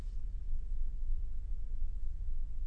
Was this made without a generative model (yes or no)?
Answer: no